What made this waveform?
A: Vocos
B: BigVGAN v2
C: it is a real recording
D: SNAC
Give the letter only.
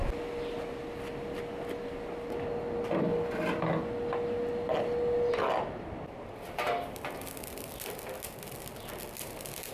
C